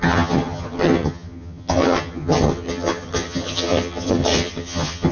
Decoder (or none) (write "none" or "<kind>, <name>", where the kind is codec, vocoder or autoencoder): vocoder, HiFi-GAN